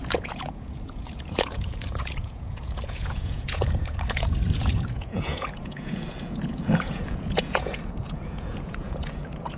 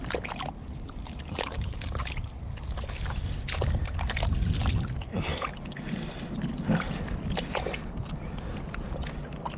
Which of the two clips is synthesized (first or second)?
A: first